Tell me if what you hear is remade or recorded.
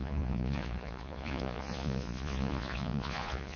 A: remade